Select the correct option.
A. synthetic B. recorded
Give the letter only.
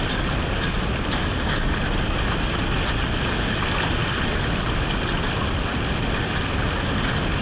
B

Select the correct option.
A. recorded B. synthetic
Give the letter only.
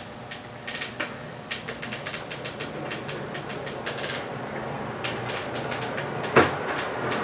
A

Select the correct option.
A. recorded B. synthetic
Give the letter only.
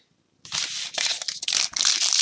A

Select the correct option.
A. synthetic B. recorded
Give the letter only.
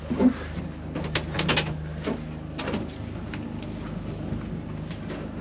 B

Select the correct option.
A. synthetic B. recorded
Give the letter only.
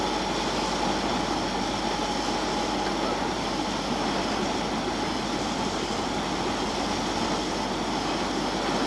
B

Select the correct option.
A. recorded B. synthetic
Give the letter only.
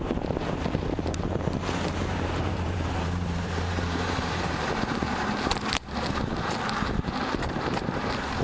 B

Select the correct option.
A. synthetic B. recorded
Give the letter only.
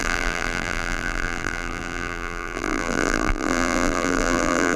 A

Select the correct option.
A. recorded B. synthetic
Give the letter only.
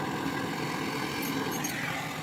A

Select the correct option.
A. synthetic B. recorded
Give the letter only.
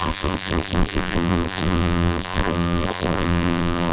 A